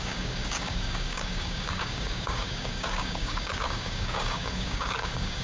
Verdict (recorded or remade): remade